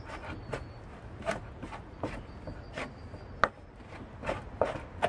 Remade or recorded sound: recorded